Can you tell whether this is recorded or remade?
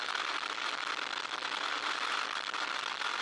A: remade